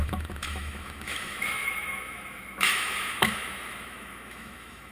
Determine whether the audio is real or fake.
fake